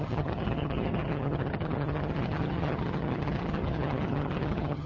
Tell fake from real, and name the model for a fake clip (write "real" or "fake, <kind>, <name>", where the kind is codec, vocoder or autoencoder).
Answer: fake, vocoder, HiFi-GAN